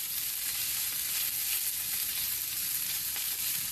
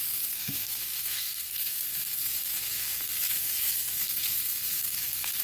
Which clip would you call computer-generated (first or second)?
second